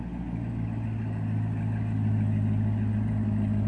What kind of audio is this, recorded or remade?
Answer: recorded